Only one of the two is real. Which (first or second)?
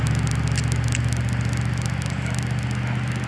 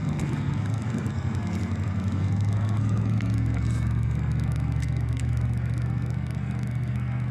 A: first